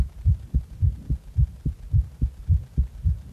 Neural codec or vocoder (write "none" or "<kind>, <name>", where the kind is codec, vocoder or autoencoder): none